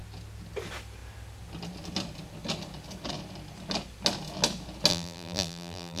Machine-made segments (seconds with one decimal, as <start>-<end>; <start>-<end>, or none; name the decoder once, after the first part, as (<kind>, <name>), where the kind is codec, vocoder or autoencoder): 4.9-6.0 (vocoder, BigVGAN v2)